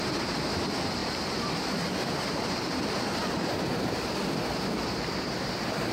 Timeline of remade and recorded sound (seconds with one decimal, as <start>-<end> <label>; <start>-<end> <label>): 0.0-5.9 remade